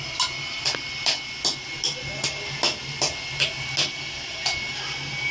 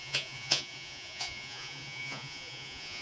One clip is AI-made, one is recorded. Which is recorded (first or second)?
first